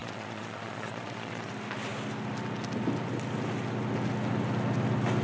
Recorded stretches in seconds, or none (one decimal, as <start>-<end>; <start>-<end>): 1.5-5.2